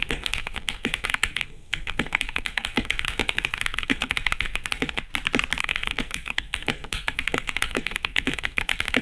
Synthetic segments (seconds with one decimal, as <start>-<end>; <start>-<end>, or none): 0.0-5.1; 5.6-9.0